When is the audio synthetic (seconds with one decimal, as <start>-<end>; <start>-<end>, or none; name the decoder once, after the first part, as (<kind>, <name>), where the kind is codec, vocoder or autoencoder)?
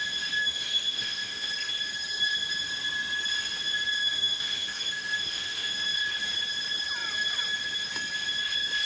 0.4-1.5 (autoencoder, DAC-VAE); 4.0-5.9